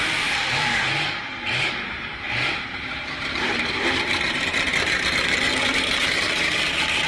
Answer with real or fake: fake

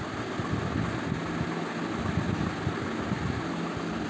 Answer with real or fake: real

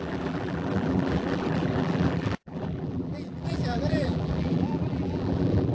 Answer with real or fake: fake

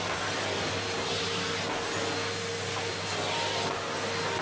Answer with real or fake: real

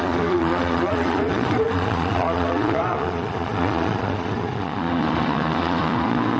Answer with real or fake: fake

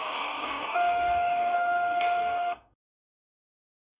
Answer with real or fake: fake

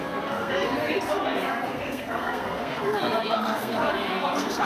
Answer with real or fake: fake